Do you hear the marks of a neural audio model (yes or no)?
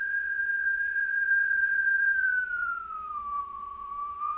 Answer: yes